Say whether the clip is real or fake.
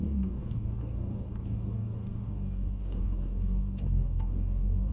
fake